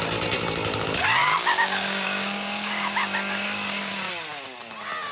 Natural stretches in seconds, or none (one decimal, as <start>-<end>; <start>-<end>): 0.0-1.2; 3.9-5.1